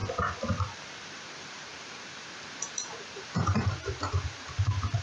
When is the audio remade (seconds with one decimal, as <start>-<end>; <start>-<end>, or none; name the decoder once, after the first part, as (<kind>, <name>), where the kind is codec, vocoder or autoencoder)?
1.1-5.0 (vocoder, BigVGAN v2)